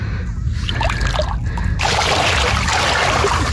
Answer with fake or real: real